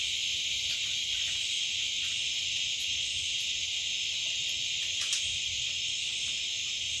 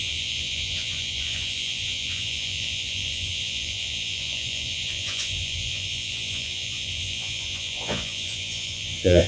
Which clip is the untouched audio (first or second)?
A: first